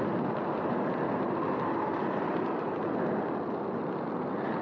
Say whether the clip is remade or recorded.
recorded